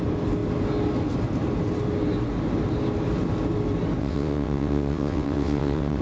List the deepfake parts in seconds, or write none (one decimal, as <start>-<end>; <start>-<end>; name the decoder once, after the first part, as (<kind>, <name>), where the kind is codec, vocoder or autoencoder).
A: 4.0-6.0 (vocoder, WaveNeXt)